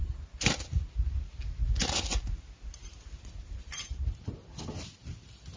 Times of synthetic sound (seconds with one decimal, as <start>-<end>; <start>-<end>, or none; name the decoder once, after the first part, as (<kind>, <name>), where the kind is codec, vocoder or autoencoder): none